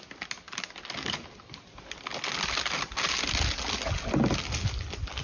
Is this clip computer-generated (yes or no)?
no